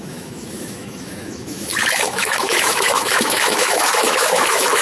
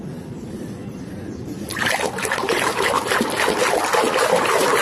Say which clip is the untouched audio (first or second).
second